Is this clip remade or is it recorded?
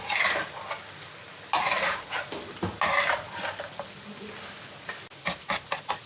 recorded